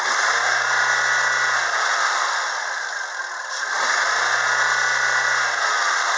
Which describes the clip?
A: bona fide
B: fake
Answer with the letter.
A